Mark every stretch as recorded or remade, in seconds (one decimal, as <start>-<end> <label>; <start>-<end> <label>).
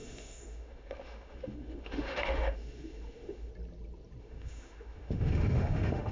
0.0-3.5 remade; 3.5-4.2 recorded; 4.2-6.1 remade